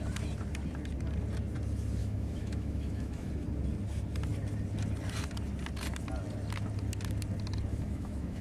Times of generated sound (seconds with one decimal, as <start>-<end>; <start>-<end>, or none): 2.0-3.3; 7.7-8.4